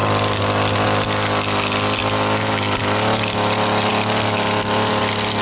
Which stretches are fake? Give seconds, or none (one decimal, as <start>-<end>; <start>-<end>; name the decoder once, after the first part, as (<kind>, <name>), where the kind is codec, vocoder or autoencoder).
none